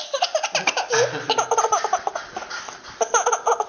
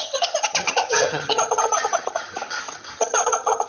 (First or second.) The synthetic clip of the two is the second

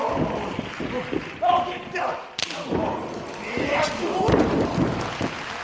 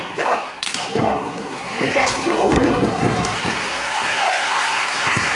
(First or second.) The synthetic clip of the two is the second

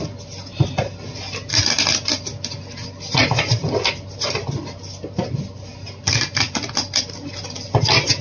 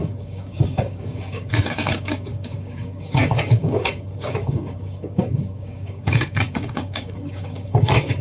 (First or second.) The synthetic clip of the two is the second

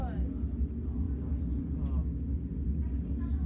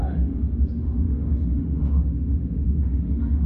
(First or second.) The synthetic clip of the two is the second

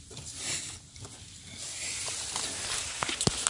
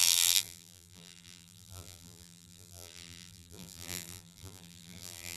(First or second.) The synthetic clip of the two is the second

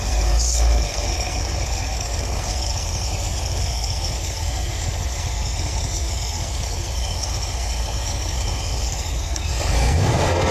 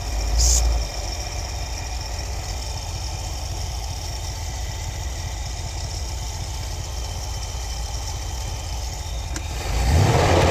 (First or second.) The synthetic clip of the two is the first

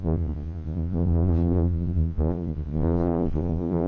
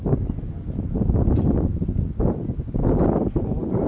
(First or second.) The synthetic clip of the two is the first